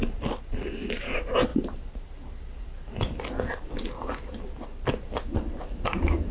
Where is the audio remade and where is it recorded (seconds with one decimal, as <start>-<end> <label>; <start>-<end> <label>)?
0.0-6.3 recorded

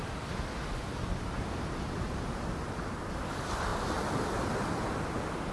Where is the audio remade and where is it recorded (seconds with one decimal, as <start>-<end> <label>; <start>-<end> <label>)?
0.0-5.5 recorded